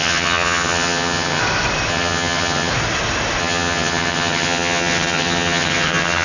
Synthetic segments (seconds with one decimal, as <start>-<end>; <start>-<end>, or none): 0.0-1.4; 1.9-2.7; 3.4-6.2